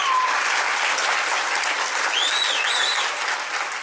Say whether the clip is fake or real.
real